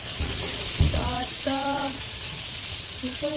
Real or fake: fake